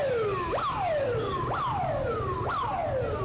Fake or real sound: real